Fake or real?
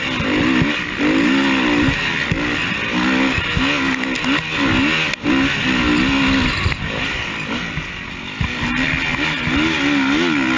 real